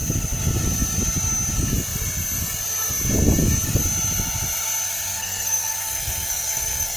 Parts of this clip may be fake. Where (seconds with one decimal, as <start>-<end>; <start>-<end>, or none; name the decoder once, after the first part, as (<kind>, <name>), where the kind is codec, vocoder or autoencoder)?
5.2-7.0 (codec, SNAC)